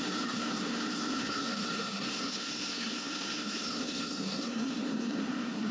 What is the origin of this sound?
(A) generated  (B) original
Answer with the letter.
A